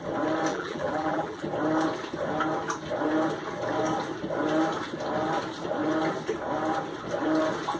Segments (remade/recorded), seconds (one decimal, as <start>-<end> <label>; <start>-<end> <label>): 0.0-0.5 recorded; 0.5-1.4 remade; 1.4-7.8 recorded